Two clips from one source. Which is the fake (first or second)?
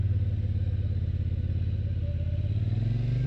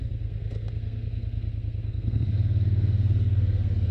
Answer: second